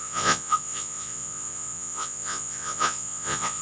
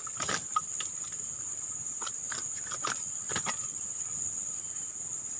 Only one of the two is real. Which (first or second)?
second